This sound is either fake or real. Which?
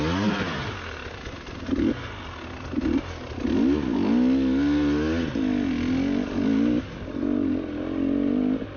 real